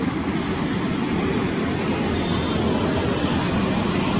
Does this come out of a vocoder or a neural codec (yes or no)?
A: no